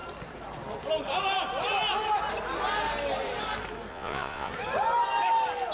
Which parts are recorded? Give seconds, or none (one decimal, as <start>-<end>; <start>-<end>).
0.0-3.9; 4.5-5.7